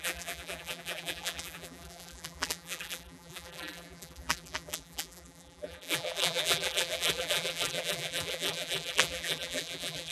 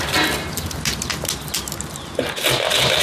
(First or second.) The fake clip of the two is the first